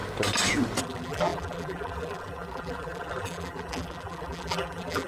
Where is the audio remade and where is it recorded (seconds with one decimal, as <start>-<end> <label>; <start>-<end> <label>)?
0.0-0.8 recorded; 0.8-5.1 remade